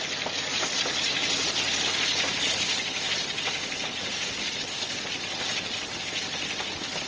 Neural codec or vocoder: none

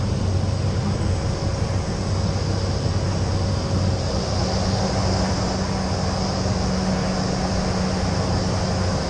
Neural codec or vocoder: none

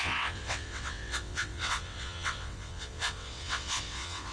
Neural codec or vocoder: vocoder, WaveNeXt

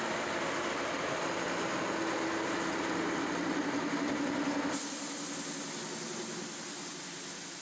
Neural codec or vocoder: none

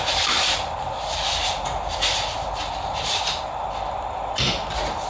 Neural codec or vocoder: none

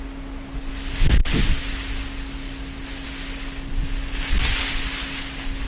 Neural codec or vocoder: none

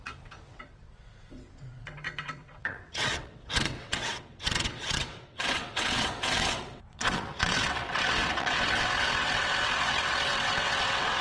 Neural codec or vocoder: vocoder, WaveNeXt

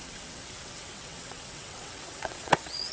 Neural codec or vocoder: vocoder, WaveNeXt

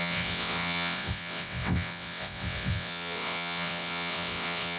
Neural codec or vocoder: vocoder, WaveNeXt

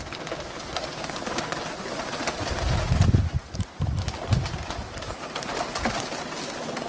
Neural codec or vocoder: none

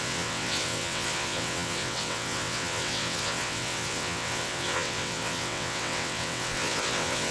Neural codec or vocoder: vocoder, WaveNeXt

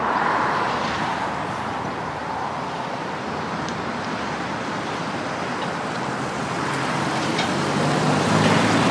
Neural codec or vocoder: none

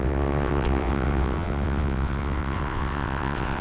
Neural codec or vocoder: vocoder, WaveNeXt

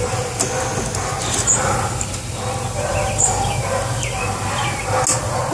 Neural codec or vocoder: none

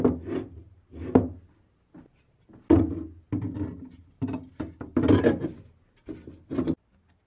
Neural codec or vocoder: none